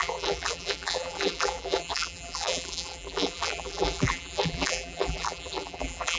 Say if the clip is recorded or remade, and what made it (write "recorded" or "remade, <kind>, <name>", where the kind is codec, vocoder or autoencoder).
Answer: remade, vocoder, BigVGAN v2